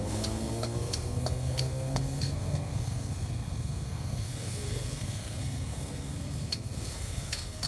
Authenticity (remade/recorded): remade